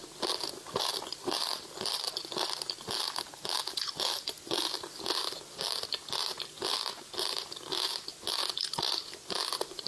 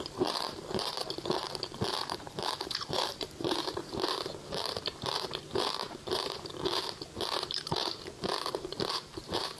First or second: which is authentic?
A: first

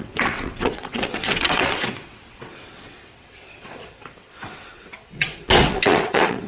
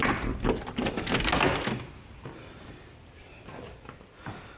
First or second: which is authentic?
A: second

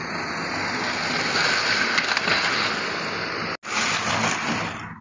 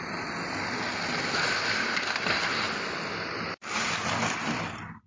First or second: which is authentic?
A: first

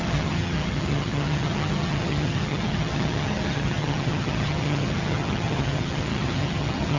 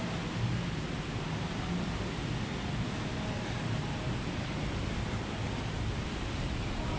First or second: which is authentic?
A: second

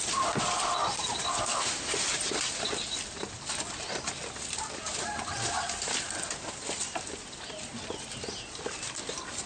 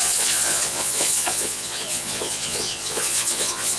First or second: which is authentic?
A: first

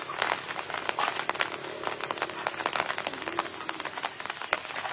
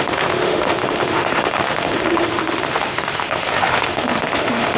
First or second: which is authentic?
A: first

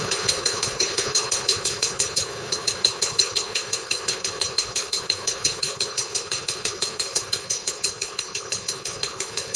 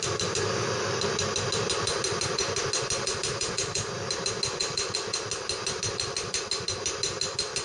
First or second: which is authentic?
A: second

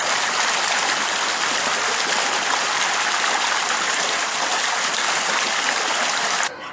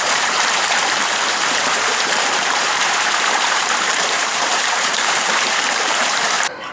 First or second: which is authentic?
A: first